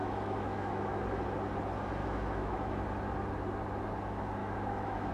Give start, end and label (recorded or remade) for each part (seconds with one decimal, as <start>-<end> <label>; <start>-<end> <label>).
0.0-1.0 remade; 1.0-2.0 recorded; 2.0-2.8 remade; 2.8-4.4 recorded; 4.4-5.1 remade